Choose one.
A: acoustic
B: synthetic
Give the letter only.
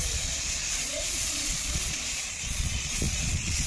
B